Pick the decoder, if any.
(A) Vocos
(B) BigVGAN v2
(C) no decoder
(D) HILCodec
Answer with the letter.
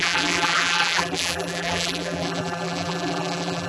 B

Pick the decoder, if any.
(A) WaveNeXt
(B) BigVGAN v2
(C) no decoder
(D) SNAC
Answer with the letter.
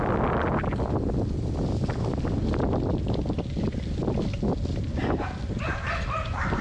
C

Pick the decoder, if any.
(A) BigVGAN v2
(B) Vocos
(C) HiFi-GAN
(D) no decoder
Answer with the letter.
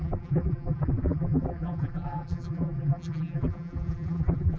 A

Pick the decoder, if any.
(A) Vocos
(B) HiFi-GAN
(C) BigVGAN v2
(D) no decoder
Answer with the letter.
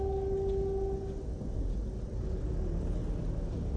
D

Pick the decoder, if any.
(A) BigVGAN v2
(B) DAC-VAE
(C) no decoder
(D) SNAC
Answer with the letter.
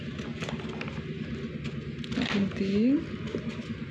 C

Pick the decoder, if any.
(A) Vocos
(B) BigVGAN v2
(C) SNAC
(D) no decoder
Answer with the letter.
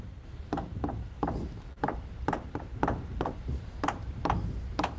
B